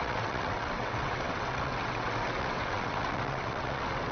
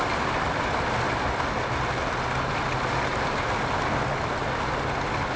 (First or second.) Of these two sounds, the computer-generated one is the first